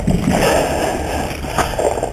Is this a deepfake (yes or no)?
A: no